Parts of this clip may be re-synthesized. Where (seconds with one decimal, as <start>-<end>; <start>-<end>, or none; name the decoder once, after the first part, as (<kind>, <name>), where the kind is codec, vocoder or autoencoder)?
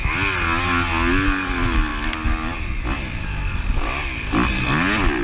none